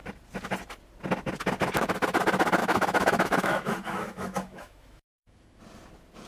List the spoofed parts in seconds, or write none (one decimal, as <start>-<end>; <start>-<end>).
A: 2.6-5.6